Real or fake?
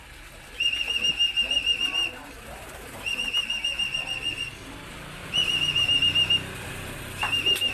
real